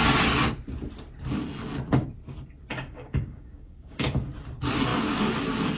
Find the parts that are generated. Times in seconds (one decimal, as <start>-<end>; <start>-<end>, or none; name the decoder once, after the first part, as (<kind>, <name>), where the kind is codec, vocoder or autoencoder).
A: 2.7-4.2 (codec, DAC)